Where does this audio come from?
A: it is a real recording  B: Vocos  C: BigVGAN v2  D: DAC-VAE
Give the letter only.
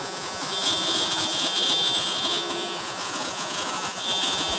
B